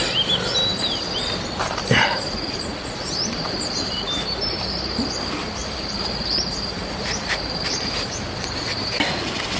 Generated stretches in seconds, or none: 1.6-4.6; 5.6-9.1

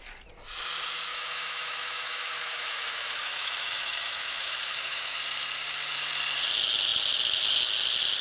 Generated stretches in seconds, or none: 1.1-5.2

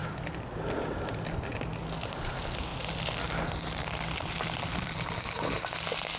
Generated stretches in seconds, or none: 0.0-1.1